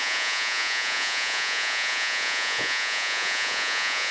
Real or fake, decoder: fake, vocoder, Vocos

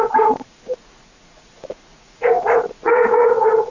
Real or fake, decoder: fake, vocoder, Vocos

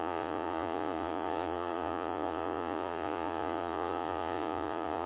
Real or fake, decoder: fake, vocoder, Vocos